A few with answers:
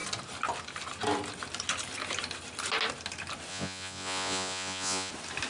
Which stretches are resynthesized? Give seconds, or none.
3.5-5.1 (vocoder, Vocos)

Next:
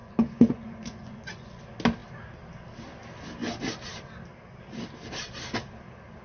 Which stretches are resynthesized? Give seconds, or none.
0.0-1.6 (vocoder, Vocos)